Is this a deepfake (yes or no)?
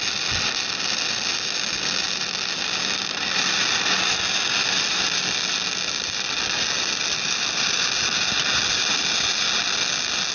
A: no